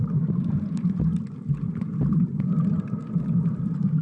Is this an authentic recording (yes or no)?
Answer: yes